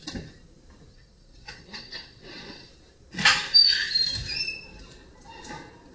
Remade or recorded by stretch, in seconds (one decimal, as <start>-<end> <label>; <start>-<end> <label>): 0.0-0.9 recorded; 0.9-2.7 remade; 2.7-5.9 recorded